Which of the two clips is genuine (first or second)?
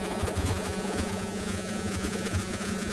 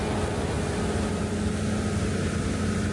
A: second